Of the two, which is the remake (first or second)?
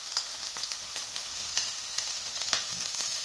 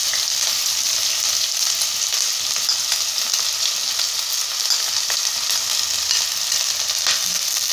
first